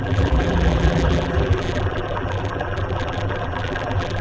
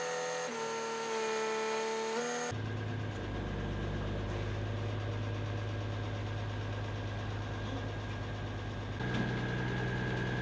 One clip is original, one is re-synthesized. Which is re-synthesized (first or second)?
first